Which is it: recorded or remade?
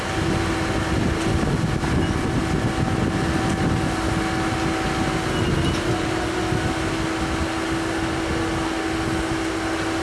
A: recorded